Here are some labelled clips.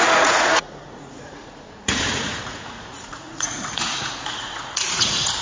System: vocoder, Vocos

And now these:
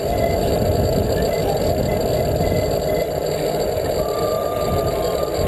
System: none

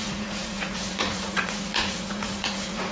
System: vocoder, Vocos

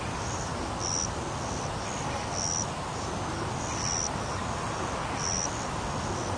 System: none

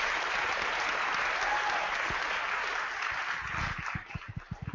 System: none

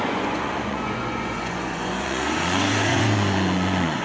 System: vocoder, Vocos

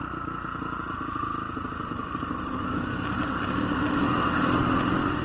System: none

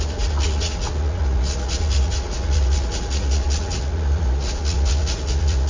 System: vocoder, Vocos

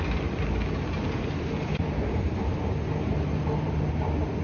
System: none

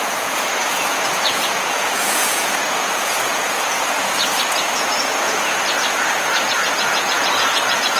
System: vocoder, Vocos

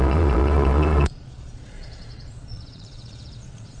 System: vocoder, Vocos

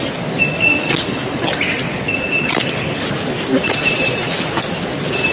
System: none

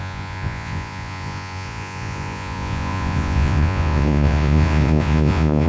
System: vocoder, Vocos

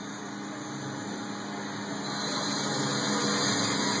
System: none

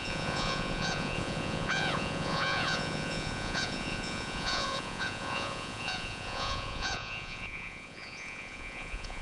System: vocoder, Vocos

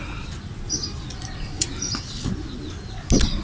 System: none